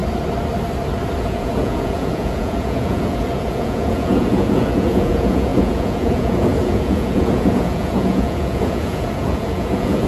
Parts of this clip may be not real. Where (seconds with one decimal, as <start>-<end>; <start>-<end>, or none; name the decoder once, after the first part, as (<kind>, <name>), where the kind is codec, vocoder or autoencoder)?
1.2-10.1 (vocoder, Vocos)

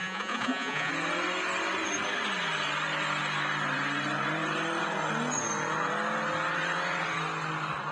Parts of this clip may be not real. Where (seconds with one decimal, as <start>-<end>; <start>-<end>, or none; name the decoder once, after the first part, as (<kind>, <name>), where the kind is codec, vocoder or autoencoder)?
0.0-0.9 (vocoder, Vocos)

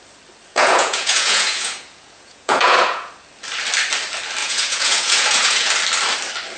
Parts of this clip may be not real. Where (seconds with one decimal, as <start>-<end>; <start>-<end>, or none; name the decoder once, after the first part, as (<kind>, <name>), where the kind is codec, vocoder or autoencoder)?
0.5-3.1 (vocoder, Vocos); 4.4-5.7

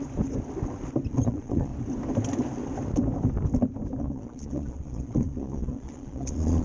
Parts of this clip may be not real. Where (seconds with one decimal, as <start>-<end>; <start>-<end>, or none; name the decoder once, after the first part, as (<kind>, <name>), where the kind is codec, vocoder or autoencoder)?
1.1-1.7 (vocoder, Vocos); 4.0-6.6

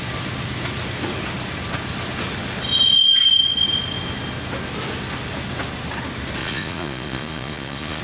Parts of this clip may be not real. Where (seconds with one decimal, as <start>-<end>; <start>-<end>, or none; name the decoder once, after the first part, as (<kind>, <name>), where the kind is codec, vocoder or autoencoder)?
6.4-8.0 (vocoder, Vocos)

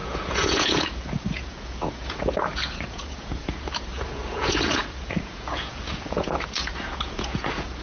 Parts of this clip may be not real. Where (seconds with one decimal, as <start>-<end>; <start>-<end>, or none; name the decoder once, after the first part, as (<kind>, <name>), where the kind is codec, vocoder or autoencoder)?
0.0-7.8 (vocoder, Vocos)

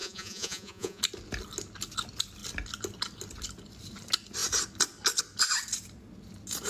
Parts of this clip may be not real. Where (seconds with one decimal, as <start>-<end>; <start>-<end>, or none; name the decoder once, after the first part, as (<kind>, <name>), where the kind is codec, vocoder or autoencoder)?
0.0-1.0 (vocoder, Vocos)